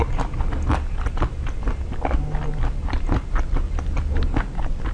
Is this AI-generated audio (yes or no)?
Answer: no